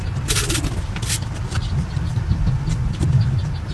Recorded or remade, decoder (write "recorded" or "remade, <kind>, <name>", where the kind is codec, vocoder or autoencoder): recorded